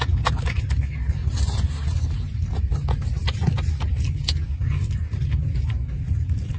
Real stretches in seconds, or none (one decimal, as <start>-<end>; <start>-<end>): 0.0-6.6